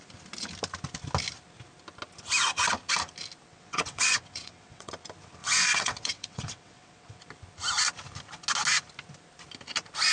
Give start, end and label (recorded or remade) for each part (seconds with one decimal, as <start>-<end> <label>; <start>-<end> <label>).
0.0-3.5 recorded; 3.5-4.9 remade; 4.9-5.4 recorded; 5.4-7.2 remade; 7.2-10.1 recorded